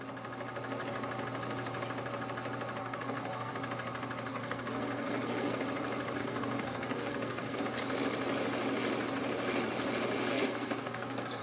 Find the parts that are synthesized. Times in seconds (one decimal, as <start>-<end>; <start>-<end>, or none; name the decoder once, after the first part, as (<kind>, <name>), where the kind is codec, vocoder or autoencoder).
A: 2.8-3.5 (codec, SNAC); 4.3-5.6; 6.2-7.6; 10.3-11.4